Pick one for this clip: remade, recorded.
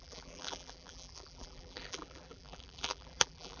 remade